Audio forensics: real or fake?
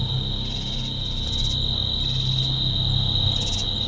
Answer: real